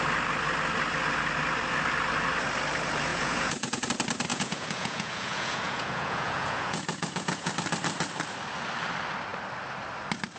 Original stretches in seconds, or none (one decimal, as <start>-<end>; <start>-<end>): 0.0-3.1; 3.9-4.3; 7.5-10.4